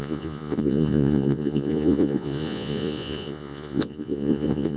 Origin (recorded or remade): remade